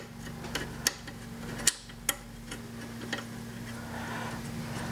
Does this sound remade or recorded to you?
recorded